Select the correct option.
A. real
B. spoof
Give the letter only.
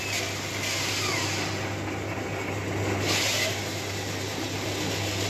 A